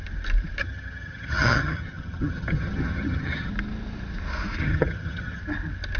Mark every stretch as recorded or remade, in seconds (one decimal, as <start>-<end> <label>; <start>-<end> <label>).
0.0-0.6 recorded; 0.6-3.5 remade; 3.5-4.6 recorded; 4.6-5.4 remade; 5.4-6.0 recorded